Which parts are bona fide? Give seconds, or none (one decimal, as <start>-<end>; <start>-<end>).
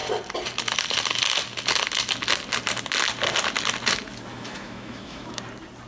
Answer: 0.0-4.3; 5.4-5.9